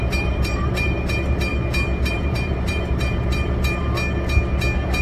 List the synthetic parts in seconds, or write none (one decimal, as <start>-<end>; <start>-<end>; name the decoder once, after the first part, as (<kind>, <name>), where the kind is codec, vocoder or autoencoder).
0.0-1.5 (vocoder, BigVGAN v2); 2.1-3.8